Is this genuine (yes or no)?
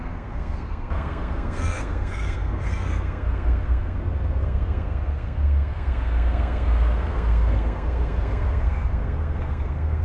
no